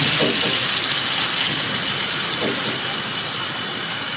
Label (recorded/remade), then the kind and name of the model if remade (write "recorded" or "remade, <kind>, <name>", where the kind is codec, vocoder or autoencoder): recorded